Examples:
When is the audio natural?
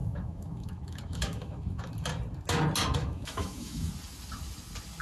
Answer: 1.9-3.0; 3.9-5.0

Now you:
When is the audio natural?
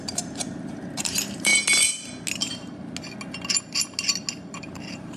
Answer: 1.5-4.6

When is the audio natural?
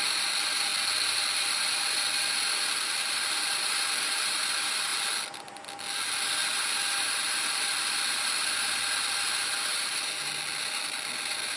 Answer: 0.7-1.3; 4.9-6.5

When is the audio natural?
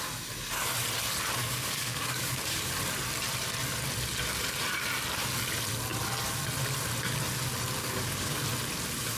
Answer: 0.0-1.4; 2.7-7.8; 8.4-9.2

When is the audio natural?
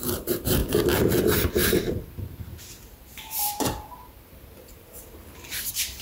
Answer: 0.6-1.2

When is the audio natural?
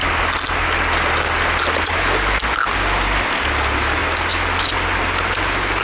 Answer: 0.0-5.8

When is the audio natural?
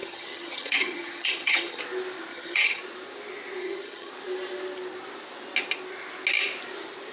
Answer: 1.8-2.3; 2.8-3.6; 4.1-7.1